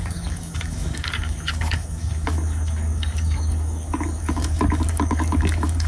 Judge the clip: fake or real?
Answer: fake